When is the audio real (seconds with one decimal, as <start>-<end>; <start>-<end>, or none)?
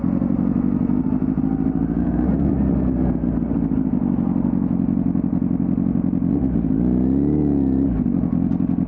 0.0-2.0; 2.5-8.9